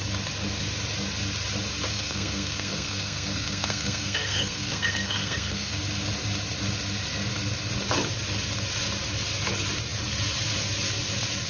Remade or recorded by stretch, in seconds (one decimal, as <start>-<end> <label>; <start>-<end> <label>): 0.0-1.9 recorded; 1.9-5.8 remade; 5.8-11.5 recorded

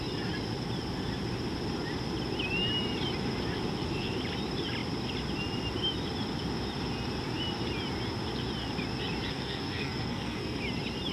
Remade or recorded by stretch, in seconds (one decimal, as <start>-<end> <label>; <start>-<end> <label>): 0.0-9.3 recorded; 9.3-10.6 remade; 10.6-11.1 recorded

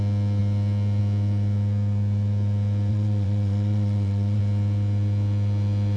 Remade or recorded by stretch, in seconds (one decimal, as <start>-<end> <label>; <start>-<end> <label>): 0.0-2.9 recorded; 2.9-4.4 remade; 4.4-6.0 recorded

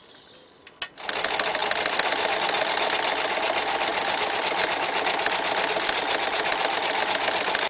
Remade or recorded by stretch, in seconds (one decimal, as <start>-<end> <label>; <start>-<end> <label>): 0.0-3.9 recorded; 3.9-4.4 remade; 4.4-7.7 recorded

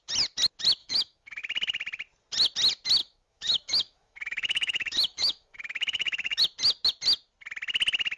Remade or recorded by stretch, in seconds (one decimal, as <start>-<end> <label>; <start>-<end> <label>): 0.0-0.8 recorded; 0.8-1.4 remade; 1.4-3.0 recorded; 3.0-6.4 remade; 6.4-8.2 recorded

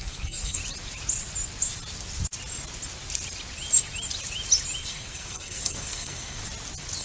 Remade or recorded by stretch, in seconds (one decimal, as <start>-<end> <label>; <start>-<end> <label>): 0.0-0.6 remade; 0.6-4.8 recorded; 4.8-6.4 remade; 6.4-7.0 recorded